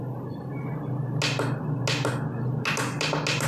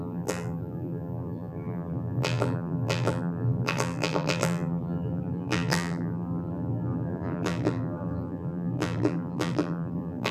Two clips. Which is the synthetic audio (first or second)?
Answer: second